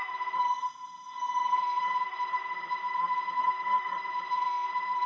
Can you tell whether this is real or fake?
fake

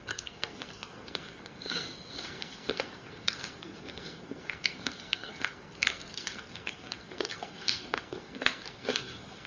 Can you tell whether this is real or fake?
fake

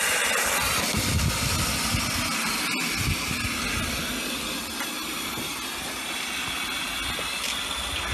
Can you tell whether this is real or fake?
real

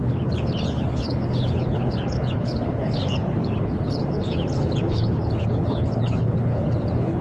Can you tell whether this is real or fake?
fake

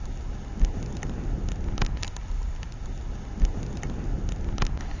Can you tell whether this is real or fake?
real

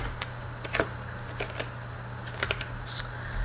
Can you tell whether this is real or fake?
real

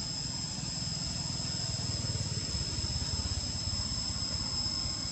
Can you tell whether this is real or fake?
real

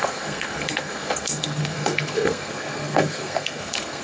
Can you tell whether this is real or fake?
fake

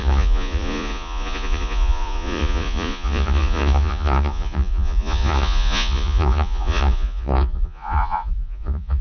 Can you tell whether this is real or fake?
fake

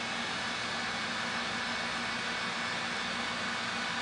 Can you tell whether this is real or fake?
real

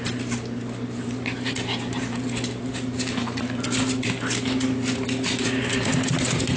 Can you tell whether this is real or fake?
real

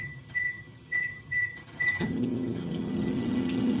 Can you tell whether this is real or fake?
fake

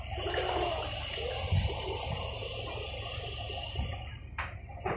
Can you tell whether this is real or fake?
real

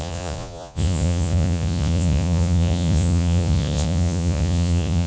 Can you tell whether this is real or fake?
fake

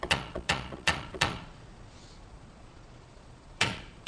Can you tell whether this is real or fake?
fake